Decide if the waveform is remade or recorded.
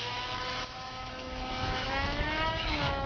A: remade